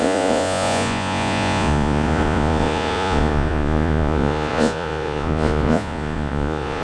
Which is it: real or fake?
fake